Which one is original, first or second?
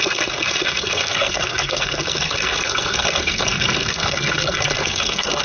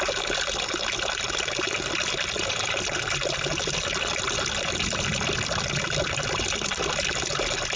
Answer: second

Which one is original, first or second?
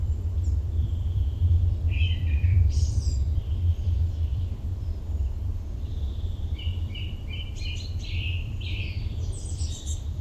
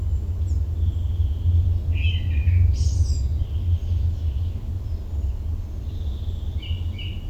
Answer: second